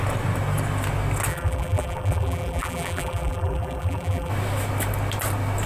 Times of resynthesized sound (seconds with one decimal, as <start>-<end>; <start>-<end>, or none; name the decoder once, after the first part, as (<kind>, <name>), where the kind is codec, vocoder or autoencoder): 1.3-4.3 (vocoder, BigVGAN v2)